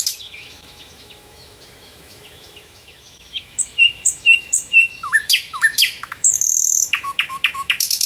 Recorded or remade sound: remade